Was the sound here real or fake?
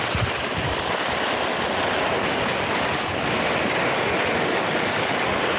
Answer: fake